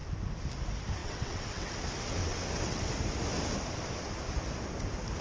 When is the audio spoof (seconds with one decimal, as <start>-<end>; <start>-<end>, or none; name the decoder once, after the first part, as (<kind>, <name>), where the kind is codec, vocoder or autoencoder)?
1.0-1.7 (vocoder, WaveNeXt); 2.2-2.9